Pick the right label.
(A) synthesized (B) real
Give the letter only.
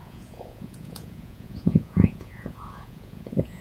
A